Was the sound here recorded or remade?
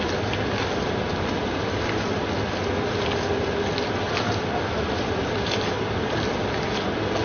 recorded